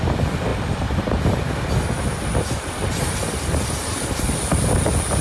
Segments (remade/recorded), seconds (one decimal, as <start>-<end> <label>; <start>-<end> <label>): 0.0-5.2 recorded